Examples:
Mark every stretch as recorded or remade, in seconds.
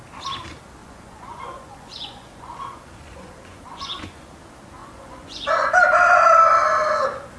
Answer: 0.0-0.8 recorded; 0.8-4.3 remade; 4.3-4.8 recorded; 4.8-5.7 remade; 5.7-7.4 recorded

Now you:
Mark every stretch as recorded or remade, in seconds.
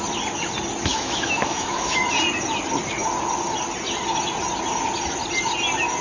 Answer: 0.0-0.9 recorded; 0.9-2.1 remade; 2.1-6.0 recorded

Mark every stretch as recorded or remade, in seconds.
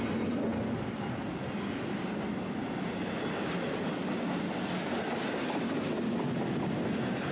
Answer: 0.0-7.3 recorded